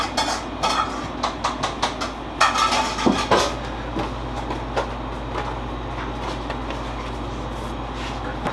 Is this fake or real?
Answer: real